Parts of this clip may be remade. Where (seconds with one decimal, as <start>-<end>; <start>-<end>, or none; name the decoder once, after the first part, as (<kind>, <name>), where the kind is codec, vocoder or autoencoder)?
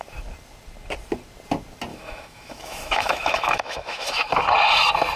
1.9-4.4 (autoencoder, DAC-VAE)